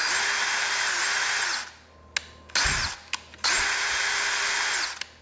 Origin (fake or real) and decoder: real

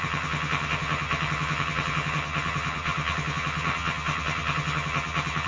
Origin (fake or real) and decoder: fake, vocoder, HiFi-GAN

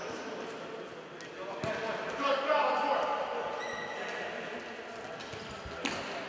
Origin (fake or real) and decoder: real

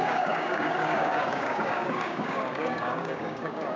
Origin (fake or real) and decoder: fake, codec, DAC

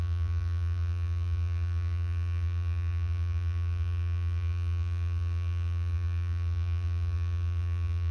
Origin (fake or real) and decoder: fake, vocoder, BigVGAN v2